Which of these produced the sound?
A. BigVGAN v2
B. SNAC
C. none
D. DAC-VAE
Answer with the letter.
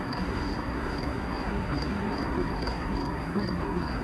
B